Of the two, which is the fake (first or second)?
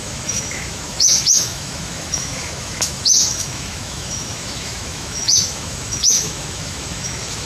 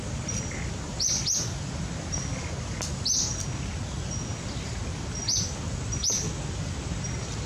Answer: first